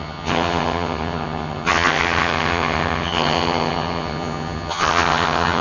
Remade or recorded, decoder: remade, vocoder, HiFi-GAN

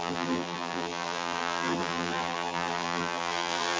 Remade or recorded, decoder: remade, vocoder, BigVGAN v2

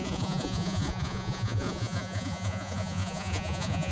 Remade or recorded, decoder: remade, vocoder, Vocos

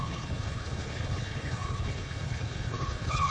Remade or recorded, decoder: remade, codec, HILCodec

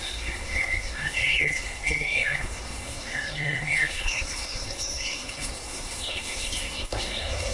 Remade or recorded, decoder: remade, codec, SNAC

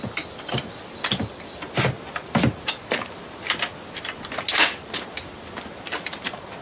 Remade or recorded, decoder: recorded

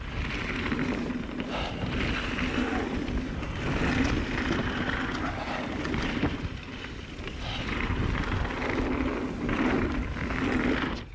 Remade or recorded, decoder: recorded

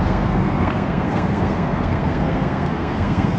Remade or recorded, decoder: remade, codec, SNAC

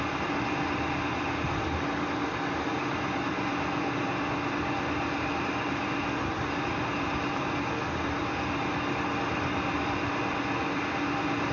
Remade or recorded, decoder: recorded